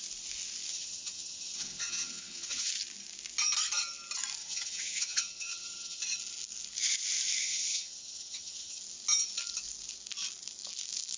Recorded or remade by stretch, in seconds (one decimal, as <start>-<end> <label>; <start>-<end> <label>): 0.0-0.7 recorded; 0.7-2.7 remade; 2.7-4.4 recorded; 4.4-6.0 remade; 6.0-7.4 recorded; 7.4-8.8 remade; 8.8-11.2 recorded